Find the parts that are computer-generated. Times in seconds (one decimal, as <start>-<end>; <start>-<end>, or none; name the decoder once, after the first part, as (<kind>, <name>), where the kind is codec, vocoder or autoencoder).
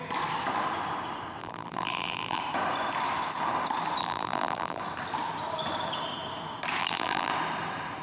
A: 1.4-2.4 (vocoder, BigVGAN v2); 4.0-4.8; 6.8-7.3